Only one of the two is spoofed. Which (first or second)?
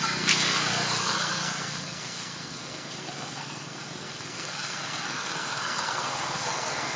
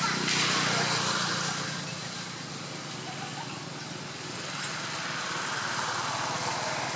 first